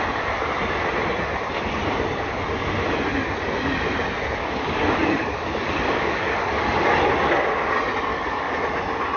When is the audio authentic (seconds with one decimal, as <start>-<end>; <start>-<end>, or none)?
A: 0.0-4.4; 7.1-8.1; 8.6-9.2